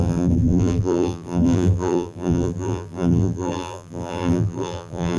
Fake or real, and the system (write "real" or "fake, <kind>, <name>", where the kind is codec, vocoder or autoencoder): fake, vocoder, BigVGAN v2